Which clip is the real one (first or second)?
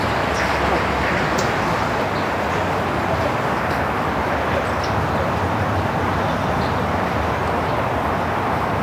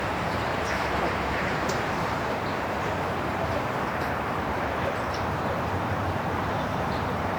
first